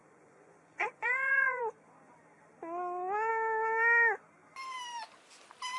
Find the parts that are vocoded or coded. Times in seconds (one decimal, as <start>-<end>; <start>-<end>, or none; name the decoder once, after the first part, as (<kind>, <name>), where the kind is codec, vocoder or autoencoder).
0.0-1.6 (vocoder, Vocos)